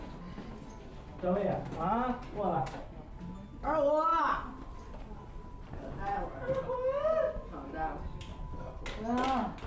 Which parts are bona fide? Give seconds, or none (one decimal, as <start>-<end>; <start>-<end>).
0.0-4.1; 6.4-8.3; 8.8-9.7